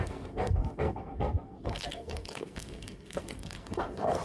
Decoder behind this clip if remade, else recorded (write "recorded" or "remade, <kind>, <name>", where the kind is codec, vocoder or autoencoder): remade, codec, SNAC